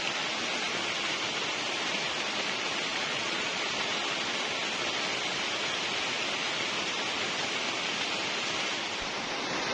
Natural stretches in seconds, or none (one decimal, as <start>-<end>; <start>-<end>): 0.0-2.9; 3.6-9.7